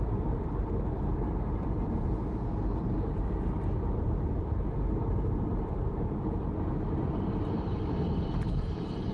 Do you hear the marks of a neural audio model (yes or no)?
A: yes